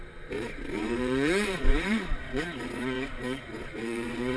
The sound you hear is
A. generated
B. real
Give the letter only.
A